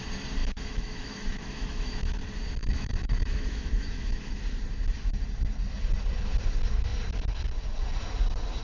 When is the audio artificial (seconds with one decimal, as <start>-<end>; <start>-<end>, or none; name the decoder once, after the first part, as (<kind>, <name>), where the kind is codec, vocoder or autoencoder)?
0.4-2.2 (autoencoder, DAC-VAE); 2.6-4.4

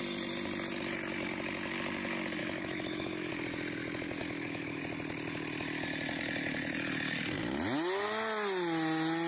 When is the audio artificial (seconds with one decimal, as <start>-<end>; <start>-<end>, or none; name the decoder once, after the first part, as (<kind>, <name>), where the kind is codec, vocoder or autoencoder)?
2.4-3.3 (autoencoder, DAC-VAE); 4.2-4.8

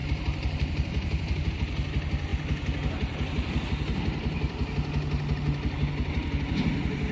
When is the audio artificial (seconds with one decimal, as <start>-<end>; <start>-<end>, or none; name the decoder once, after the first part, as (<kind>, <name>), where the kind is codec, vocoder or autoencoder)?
none

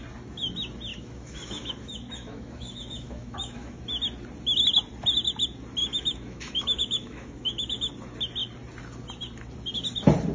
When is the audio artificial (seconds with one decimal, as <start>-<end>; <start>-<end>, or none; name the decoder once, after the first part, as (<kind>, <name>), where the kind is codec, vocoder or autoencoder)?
0.9-3.8 (autoencoder, DAC-VAE); 5.8-7.9